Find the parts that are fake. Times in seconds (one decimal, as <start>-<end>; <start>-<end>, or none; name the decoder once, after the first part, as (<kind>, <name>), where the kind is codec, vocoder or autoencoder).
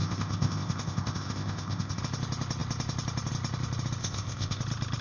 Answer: 0.0-2.0 (codec, ZipCodec); 4.0-4.6